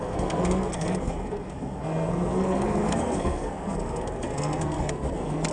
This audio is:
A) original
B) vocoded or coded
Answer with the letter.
B